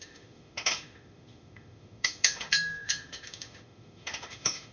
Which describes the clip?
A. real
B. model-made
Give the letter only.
B